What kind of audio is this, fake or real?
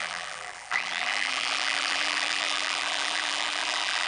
fake